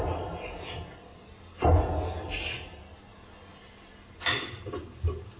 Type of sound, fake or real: real